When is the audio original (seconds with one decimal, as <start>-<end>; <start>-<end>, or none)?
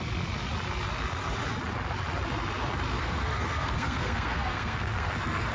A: 0.0-3.0